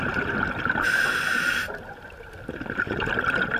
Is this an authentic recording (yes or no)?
yes